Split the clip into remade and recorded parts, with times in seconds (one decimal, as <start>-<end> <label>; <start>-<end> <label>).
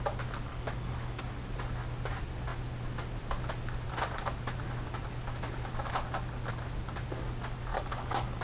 0.0-0.5 recorded; 0.5-1.2 remade; 1.2-7.7 recorded; 7.7-8.4 remade